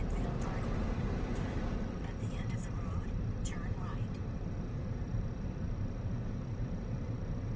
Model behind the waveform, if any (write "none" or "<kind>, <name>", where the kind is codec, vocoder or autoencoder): vocoder, BigVGAN v2